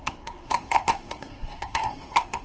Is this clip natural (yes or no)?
no